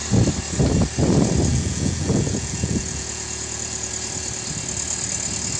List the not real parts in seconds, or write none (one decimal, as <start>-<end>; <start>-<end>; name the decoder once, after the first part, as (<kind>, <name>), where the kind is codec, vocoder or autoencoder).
1.5-3.9 (vocoder, Vocos)

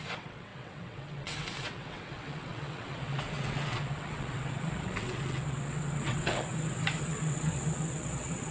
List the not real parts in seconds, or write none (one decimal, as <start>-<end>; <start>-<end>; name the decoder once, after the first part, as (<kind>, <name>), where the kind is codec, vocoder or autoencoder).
0.0-6.5 (vocoder, WaveNeXt); 7.0-8.5

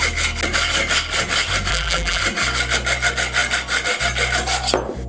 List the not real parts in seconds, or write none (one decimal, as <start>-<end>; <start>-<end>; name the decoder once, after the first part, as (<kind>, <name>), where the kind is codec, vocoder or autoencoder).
1.7-2.2 (vocoder, BigVGAN v2)

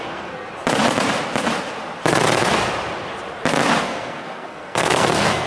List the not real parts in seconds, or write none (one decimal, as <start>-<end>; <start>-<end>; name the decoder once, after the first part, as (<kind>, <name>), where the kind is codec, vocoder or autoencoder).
0.0-0.5 (codec, SNAC); 3.8-5.5